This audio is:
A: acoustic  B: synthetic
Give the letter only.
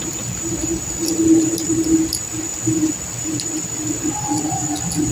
B